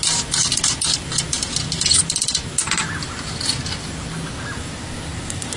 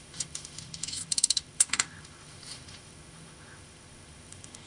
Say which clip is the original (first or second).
first